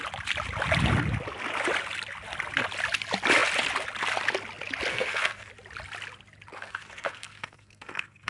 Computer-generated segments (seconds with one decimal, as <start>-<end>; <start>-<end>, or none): 4.9-5.5; 6.5-8.3